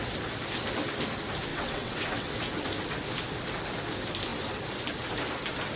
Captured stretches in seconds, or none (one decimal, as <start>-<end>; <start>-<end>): 0.0-1.5; 2.3-5.8